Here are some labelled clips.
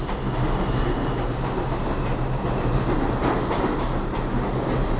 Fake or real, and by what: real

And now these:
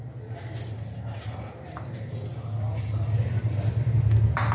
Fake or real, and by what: real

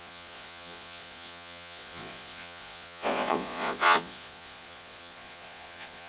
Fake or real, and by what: fake, vocoder, Vocos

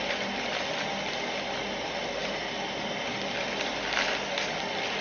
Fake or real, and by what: fake, vocoder, BigVGAN v2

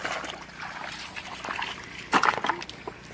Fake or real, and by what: real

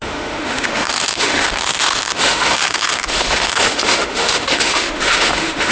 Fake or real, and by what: fake, autoencoder, DAC-VAE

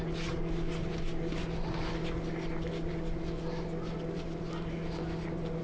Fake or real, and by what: real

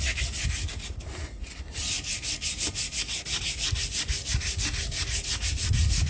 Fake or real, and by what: real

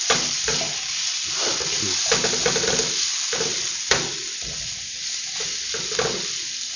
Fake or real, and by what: real